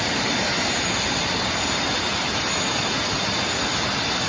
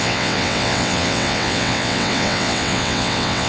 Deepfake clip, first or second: second